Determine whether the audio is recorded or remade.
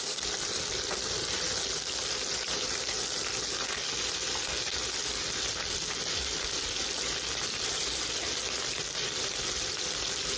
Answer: recorded